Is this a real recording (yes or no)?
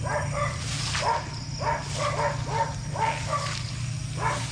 yes